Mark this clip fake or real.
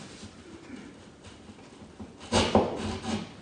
real